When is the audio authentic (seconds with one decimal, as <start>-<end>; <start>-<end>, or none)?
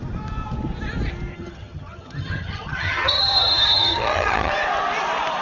0.0-1.3; 4.5-5.4